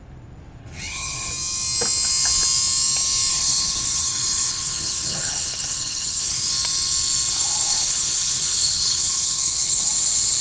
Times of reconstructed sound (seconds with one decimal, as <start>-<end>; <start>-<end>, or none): 0.6-1.3; 3.3-6.5; 7.7-9.9